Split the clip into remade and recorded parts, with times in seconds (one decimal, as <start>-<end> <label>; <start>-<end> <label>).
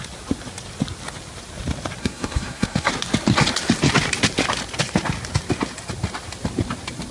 0.0-2.0 recorded; 2.0-2.9 remade; 2.9-7.1 recorded